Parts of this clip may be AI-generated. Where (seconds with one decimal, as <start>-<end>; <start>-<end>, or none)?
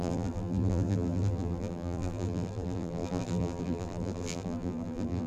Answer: 0.0-5.3